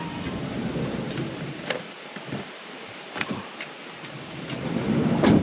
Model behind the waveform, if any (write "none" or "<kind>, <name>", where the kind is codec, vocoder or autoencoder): vocoder, BigVGAN v2